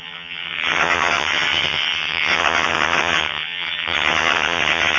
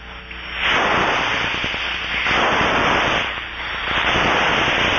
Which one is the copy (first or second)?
first